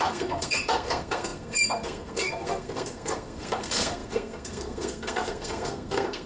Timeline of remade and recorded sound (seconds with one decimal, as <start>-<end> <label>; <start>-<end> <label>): 0.0-6.3 remade

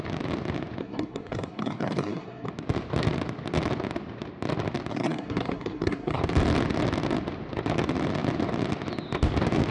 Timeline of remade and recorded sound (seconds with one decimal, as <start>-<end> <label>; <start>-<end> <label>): 0.0-0.8 recorded; 0.8-2.5 remade; 2.5-4.9 recorded; 4.9-6.2 remade; 6.2-9.7 recorded

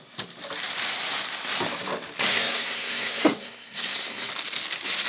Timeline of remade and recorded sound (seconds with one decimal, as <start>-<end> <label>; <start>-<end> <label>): 0.0-2.3 recorded; 2.3-4.3 remade; 4.3-5.1 recorded

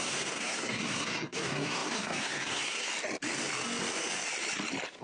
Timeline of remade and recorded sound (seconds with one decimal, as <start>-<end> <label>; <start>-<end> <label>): 0.0-2.9 remade; 2.9-5.0 recorded